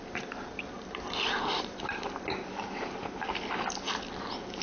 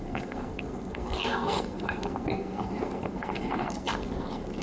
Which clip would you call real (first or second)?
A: first